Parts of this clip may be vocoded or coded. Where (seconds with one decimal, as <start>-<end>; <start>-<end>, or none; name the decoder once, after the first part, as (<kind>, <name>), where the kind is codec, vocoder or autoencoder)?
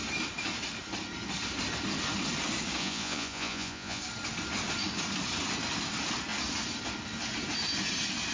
2.8-4.0 (vocoder, Vocos)